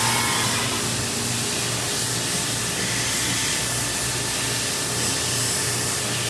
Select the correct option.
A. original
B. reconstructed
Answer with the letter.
A